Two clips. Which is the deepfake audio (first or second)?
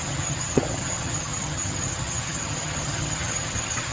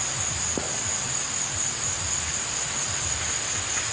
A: first